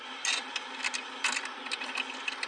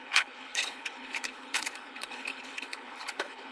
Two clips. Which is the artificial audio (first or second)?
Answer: second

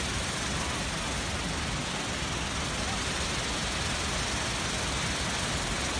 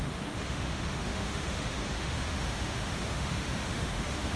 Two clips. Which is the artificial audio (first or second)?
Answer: second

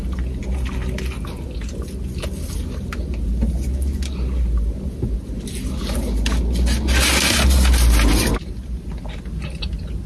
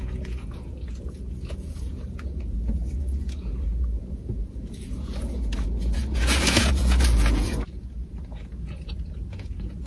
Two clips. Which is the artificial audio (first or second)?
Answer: second